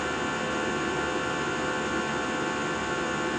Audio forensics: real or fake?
real